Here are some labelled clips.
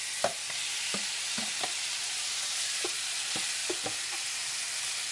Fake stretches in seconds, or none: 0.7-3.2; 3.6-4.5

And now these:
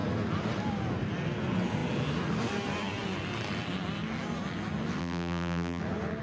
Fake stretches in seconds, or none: 5.0-5.8

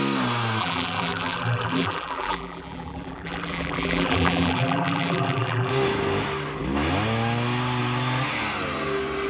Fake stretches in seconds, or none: 0.6-5.7

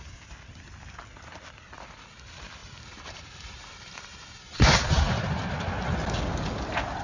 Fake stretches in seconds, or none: 2.6-5.7

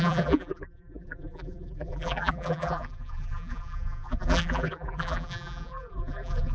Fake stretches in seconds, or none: 0.0-6.5